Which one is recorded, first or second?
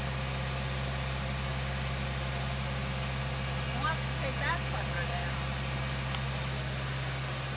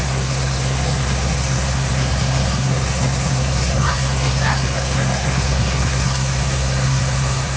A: first